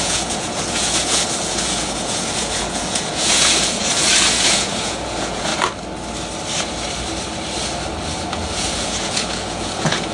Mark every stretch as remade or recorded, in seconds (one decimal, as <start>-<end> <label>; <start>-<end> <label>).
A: 0.0-5.5 remade; 5.5-8.3 recorded; 8.3-10.1 remade